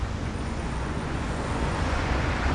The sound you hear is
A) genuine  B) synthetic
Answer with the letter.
B